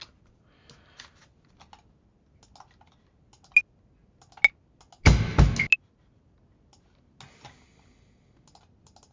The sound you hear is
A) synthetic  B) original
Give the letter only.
B